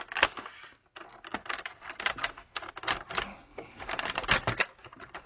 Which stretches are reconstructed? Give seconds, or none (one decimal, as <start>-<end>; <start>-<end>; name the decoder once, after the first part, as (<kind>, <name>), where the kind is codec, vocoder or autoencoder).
none